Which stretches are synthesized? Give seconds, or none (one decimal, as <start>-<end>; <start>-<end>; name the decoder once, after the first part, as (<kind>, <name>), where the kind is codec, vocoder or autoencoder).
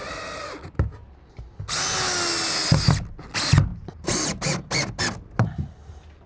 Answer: none